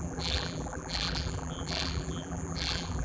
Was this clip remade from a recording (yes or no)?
yes